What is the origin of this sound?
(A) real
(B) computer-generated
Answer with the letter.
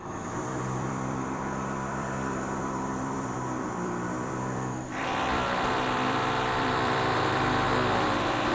B